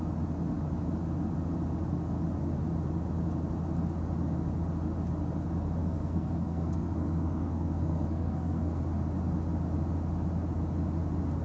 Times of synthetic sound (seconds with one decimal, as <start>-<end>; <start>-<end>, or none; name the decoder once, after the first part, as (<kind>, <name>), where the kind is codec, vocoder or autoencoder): 5.8-8.8 (codec, SNAC)